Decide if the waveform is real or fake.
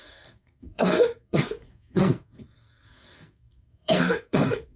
fake